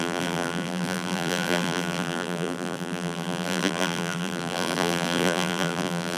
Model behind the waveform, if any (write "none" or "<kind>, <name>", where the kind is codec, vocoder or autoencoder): vocoder, BigVGAN v2